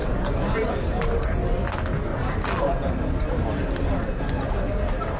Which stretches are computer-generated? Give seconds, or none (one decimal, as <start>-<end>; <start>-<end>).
0.0-1.2; 2.1-3.8